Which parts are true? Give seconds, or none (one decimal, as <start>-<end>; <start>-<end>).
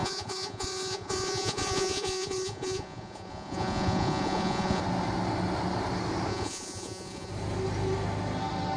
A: 4.8-6.3; 7.3-8.8